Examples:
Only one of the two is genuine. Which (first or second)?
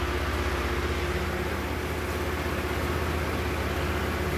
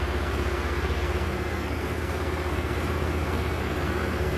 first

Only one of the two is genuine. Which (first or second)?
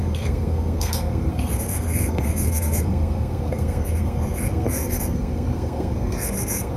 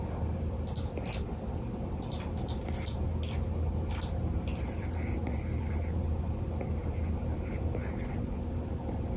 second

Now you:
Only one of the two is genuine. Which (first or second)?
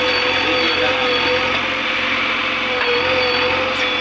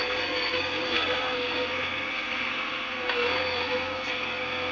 first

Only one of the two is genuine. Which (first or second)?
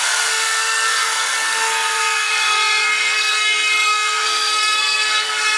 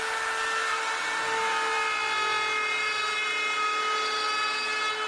second